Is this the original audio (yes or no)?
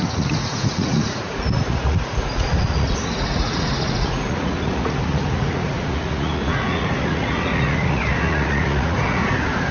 no